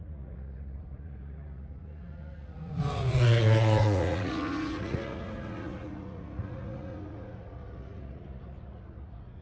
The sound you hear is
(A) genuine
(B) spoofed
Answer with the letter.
B